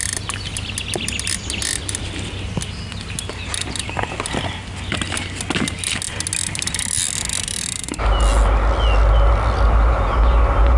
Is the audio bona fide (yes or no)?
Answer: yes